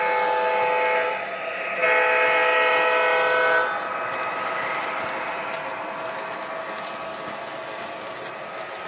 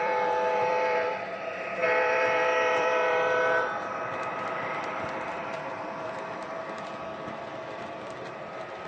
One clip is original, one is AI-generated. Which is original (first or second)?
first